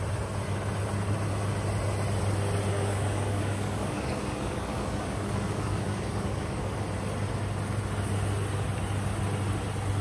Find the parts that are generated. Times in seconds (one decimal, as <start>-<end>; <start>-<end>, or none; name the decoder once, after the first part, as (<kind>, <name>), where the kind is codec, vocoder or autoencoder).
2.7-6.8 (codec, DAC)